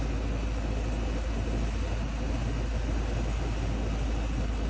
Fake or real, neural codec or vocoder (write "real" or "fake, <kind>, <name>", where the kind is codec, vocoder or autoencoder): real